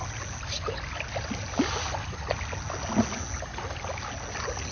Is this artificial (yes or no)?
no